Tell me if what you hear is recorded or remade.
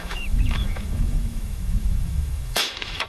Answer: remade